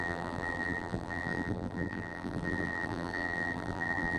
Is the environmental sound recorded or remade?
remade